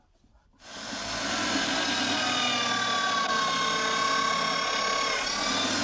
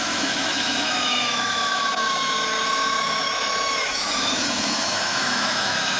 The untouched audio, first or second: first